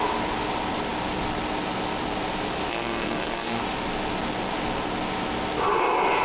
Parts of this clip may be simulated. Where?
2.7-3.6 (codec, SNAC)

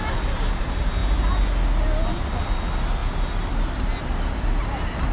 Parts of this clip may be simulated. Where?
none

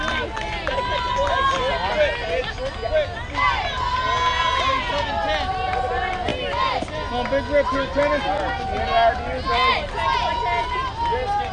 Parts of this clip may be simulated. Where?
none

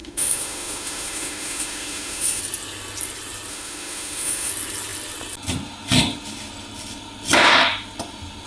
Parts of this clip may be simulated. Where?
0.0-2.4 (autoencoder, DAC-VAE); 3.5-4.5